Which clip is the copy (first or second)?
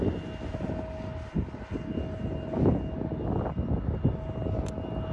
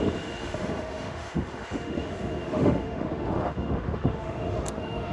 second